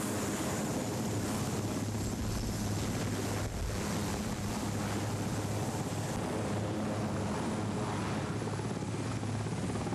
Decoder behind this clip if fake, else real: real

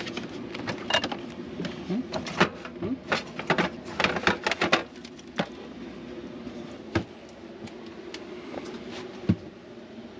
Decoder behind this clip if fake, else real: real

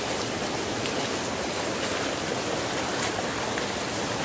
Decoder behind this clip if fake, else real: real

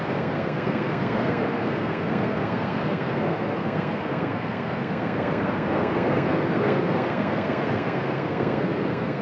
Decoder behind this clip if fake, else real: fake, codec, SNAC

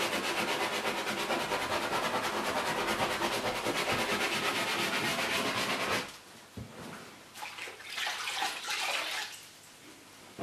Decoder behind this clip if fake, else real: real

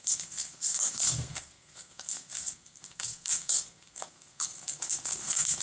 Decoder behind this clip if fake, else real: fake, codec, SNAC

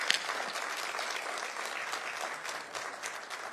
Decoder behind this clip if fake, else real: real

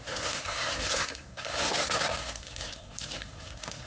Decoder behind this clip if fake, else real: fake, codec, SNAC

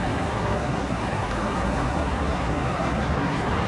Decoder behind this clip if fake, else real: fake, codec, SNAC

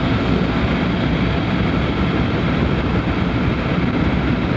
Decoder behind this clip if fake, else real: real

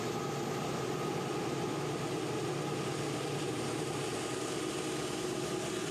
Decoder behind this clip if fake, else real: real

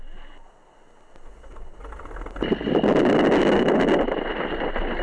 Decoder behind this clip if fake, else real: real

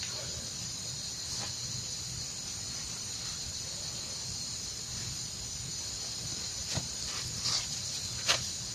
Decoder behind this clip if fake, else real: real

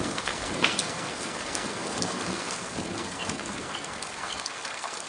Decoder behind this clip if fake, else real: fake, codec, SNAC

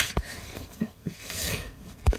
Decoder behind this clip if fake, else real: fake, codec, SNAC